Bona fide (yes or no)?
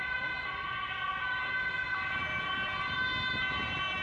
yes